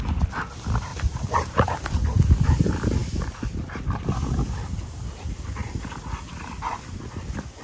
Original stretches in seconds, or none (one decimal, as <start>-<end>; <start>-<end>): 0.0-0.9; 1.7-3.0; 3.6-7.6